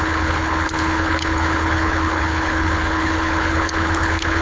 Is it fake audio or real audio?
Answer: fake